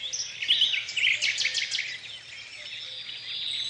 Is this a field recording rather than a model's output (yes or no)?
yes